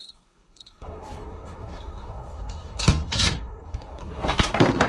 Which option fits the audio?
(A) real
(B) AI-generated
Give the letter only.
B